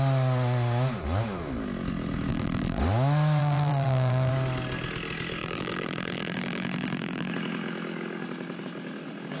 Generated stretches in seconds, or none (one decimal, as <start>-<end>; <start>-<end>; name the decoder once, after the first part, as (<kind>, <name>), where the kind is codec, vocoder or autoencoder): 2.3-2.8 (vocoder, BigVGAN v2); 3.4-4.3; 5.4-7.3